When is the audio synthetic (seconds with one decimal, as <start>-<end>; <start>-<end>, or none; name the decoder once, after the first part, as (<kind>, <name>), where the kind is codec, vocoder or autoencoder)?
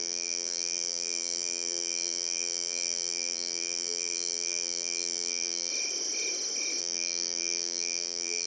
0.0-5.7 (vocoder, BigVGAN v2); 6.8-8.5